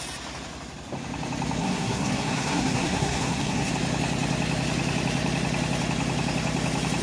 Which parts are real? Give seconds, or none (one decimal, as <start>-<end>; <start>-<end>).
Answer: 0.0-1.6; 3.7-7.0